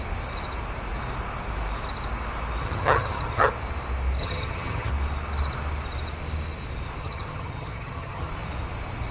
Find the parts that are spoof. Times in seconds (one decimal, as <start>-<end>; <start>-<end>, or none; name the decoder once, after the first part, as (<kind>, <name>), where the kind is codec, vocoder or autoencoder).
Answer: 2.6-3.5 (vocoder, HiFi-GAN); 4.2-4.9; 7.0-8.3